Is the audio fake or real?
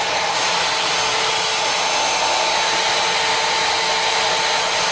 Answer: real